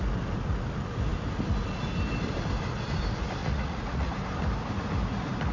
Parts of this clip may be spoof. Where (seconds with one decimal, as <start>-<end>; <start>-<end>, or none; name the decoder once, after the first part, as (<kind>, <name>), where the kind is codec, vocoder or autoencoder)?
3.4-4.1 (vocoder, Vocos)